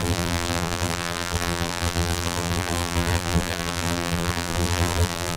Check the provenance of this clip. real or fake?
fake